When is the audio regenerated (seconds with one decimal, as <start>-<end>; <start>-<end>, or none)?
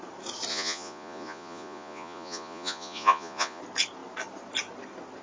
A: 0.5-3.6